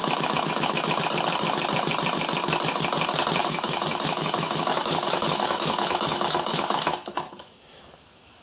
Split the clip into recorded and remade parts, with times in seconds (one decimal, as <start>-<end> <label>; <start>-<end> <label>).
0.0-1.0 remade; 1.0-3.4 recorded; 3.4-8.4 remade